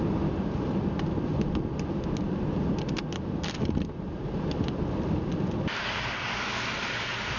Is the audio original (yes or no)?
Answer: yes